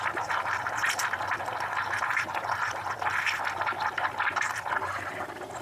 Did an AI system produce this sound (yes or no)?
no